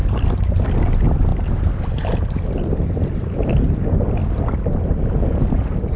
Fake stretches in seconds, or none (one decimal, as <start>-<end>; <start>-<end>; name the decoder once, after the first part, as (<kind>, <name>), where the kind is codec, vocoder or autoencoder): 0.0-0.6 (vocoder, BigVGAN v2)